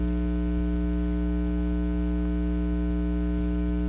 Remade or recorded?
recorded